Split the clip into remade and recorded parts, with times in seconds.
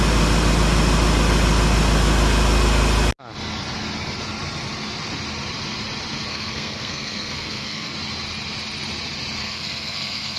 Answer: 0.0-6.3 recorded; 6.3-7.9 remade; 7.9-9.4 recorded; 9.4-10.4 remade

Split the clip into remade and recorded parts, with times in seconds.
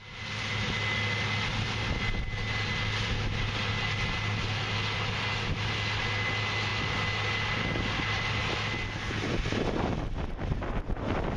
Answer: 0.0-11.4 recorded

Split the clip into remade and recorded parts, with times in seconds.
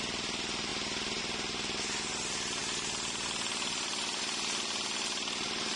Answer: 0.0-5.8 recorded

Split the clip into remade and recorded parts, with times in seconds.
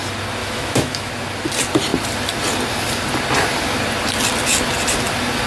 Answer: 0.0-0.4 recorded; 0.4-1.1 remade; 1.1-5.5 recorded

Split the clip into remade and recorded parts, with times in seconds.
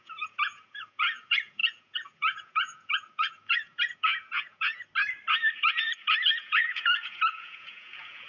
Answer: 0.0-4.8 remade; 4.8-5.6 recorded; 5.6-8.3 remade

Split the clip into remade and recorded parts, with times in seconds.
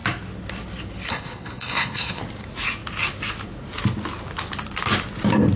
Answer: 0.0-1.1 recorded; 1.1-2.2 remade; 2.2-5.6 recorded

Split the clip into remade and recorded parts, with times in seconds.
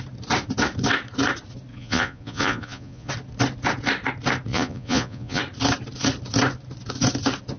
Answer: 0.0-1.7 recorded; 1.7-3.1 remade; 3.1-4.5 recorded; 4.5-5.4 remade; 5.4-7.6 recorded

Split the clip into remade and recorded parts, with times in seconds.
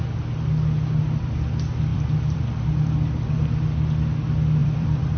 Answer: 0.0-1.9 recorded; 1.9-2.7 remade; 2.7-4.6 recorded; 4.6-5.2 remade